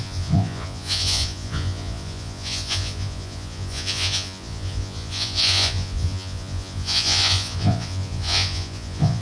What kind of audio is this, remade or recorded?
remade